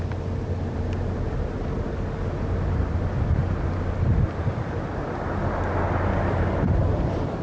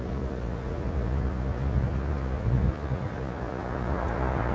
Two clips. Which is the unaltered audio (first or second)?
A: first